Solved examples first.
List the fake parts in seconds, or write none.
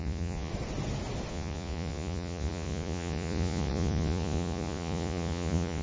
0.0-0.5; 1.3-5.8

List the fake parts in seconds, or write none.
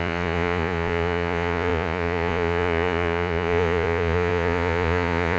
0.0-5.4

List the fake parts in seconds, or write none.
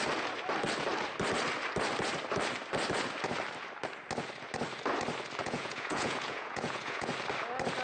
5.4-7.1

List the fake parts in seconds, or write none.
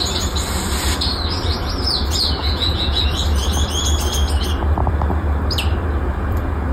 2.4-3.0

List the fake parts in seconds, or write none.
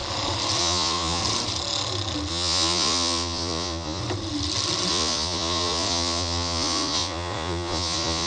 0.6-1.2; 2.3-4.0; 4.9-8.3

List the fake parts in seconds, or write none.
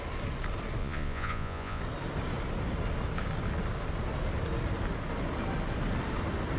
0.8-1.8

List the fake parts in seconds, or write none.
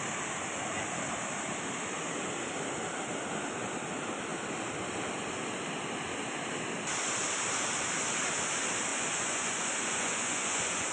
8.9-10.9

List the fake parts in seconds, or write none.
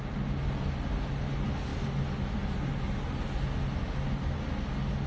none